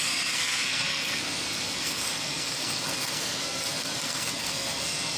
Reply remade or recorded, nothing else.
remade